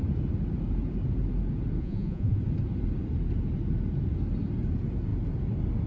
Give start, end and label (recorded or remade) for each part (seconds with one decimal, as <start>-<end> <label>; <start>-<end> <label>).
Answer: 0.0-1.8 recorded; 1.8-2.4 remade; 2.4-5.9 recorded